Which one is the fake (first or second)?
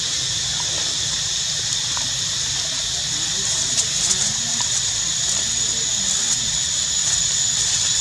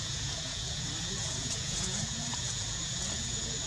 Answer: second